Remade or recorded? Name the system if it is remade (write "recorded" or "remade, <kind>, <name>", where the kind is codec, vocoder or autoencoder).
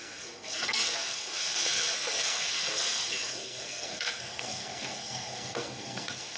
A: remade, codec, SNAC